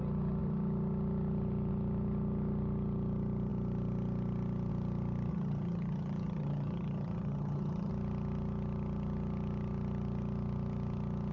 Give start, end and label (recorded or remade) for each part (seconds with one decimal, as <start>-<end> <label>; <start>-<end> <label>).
0.0-5.3 recorded; 5.3-7.9 remade; 7.9-11.3 recorded